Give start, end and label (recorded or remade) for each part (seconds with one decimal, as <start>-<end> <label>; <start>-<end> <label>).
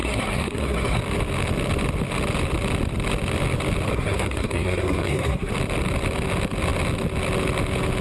0.0-1.0 remade; 1.0-3.9 recorded; 3.9-5.5 remade; 5.5-8.0 recorded